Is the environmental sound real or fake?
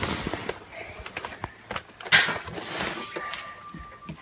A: real